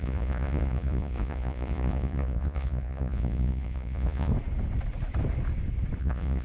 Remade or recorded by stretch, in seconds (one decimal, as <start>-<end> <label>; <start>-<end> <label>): 0.0-4.3 remade; 4.3-6.0 recorded; 6.0-6.4 remade